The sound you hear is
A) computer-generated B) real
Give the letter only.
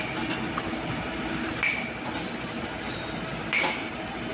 B